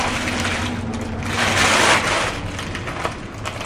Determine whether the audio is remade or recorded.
recorded